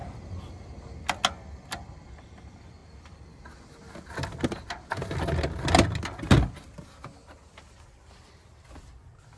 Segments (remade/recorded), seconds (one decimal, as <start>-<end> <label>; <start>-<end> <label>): 0.0-9.4 recorded